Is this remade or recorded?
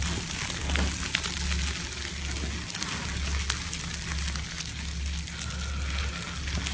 recorded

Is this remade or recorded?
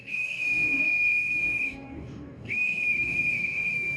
remade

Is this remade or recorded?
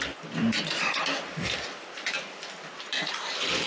recorded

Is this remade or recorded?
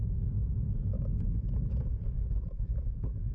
remade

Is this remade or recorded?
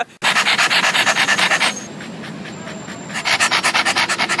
recorded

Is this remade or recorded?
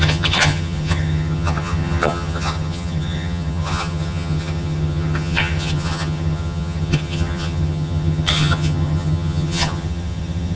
remade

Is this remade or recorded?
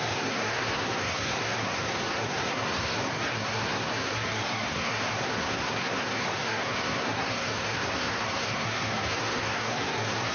remade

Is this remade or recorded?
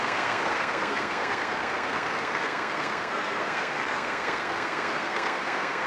remade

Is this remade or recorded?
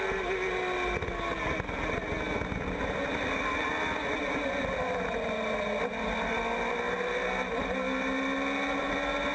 recorded